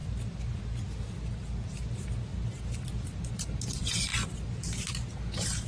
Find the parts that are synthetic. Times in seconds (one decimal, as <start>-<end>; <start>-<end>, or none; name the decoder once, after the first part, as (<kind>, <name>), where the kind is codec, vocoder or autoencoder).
none